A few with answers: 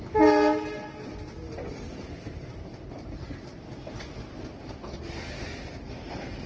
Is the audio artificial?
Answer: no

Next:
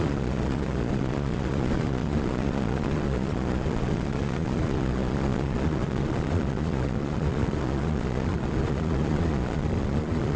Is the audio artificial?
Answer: yes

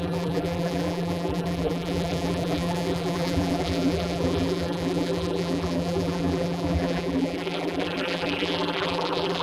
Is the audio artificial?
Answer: yes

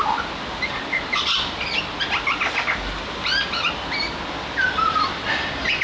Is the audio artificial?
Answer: no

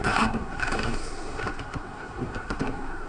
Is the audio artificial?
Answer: yes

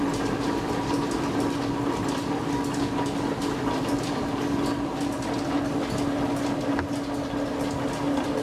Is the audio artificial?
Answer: no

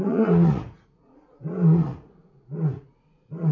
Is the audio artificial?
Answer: yes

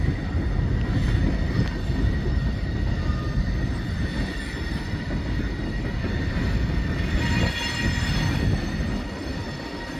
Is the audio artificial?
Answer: no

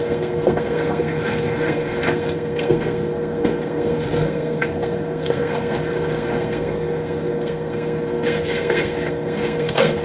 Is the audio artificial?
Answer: yes